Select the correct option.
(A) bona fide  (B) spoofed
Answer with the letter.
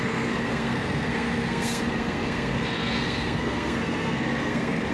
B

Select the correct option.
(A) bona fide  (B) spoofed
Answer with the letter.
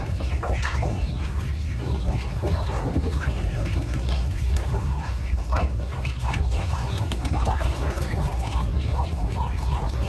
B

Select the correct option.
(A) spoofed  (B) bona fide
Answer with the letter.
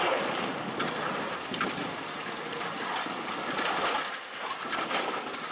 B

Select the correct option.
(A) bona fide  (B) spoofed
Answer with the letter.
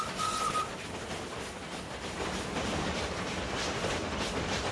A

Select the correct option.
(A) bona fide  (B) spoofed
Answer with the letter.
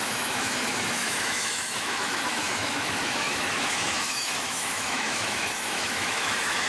B